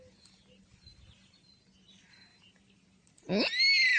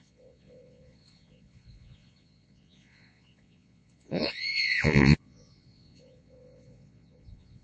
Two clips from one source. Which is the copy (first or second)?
second